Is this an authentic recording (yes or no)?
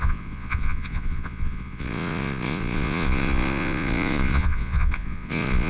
no